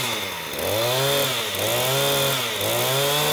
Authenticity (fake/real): real